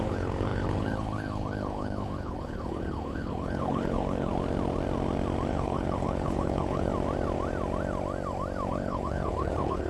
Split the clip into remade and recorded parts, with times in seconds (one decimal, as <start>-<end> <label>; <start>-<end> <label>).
0.0-4.3 remade; 4.3-5.5 recorded; 5.5-6.9 remade; 6.9-8.7 recorded; 8.7-9.9 remade